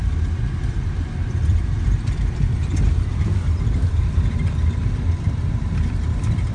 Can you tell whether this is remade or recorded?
remade